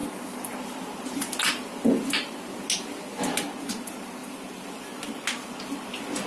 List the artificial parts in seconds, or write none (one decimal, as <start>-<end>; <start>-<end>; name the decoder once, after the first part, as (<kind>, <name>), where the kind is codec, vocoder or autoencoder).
none